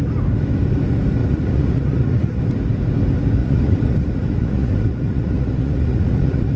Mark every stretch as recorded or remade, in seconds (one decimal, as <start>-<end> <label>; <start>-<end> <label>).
0.0-1.2 recorded; 1.2-2.4 remade; 2.4-3.4 recorded; 3.4-6.6 remade